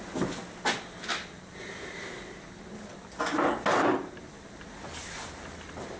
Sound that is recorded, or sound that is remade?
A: recorded